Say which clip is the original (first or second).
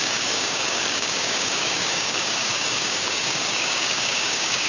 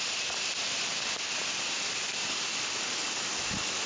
second